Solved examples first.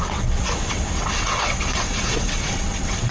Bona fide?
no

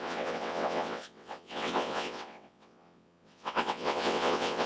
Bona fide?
no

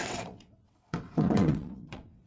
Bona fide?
no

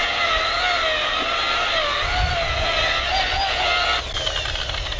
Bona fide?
yes